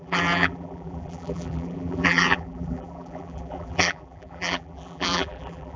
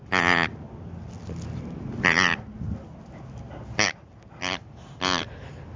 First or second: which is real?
second